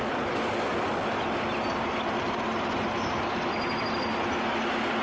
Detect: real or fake real